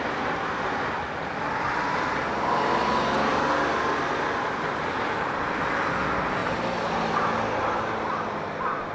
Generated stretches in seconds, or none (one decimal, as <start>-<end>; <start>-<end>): 0.0-8.9